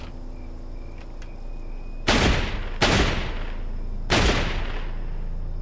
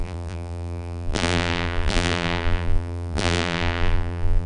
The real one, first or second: first